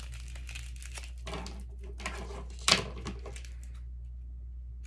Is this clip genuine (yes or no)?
yes